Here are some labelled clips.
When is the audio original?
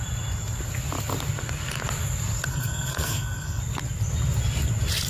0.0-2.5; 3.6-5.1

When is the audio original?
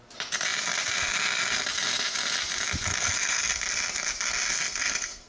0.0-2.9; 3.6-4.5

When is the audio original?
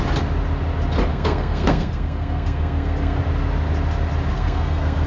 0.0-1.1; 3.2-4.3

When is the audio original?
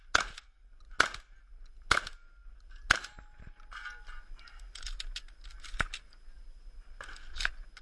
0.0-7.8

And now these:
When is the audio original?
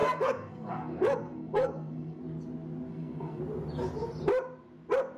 2.2-2.9; 3.4-5.2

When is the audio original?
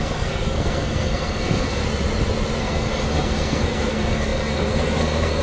1.8-2.6